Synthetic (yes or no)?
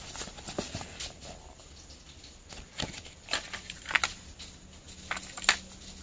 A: no